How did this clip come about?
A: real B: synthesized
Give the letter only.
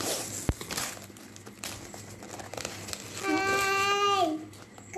A